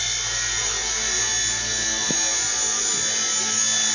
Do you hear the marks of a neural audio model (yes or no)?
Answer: no